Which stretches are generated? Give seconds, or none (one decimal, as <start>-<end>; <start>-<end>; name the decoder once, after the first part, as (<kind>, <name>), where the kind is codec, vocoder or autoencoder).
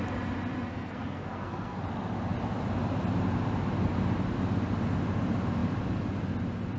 0.7-1.8 (codec, SNAC)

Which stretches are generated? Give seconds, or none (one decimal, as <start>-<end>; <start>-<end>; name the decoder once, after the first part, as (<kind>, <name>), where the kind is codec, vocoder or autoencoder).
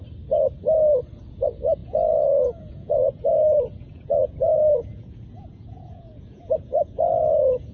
1.2-7.7 (vocoder, Vocos)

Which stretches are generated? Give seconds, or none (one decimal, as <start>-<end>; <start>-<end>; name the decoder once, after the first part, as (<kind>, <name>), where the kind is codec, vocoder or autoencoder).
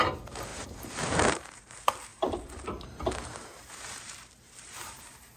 0.5-1.6 (vocoder, BigVGAN v2); 2.1-5.4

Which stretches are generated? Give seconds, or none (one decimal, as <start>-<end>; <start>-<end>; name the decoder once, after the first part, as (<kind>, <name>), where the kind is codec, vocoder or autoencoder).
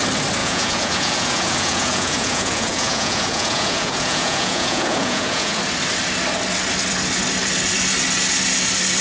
0.4-5.6 (vocoder, Vocos)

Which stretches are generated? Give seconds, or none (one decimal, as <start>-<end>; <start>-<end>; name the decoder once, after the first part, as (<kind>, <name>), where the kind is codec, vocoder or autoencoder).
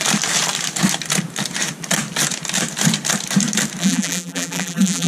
3.8-5.1 (vocoder, BigVGAN v2)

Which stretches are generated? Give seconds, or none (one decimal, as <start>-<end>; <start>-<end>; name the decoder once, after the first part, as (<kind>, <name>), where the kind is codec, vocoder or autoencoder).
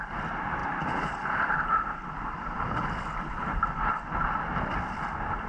none